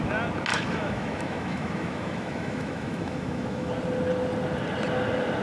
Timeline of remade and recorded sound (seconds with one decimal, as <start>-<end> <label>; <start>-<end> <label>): 0.0-0.5 recorded; 0.5-3.7 remade; 3.7-5.4 recorded